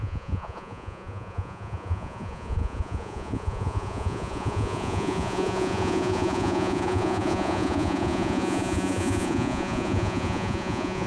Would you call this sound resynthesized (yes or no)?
yes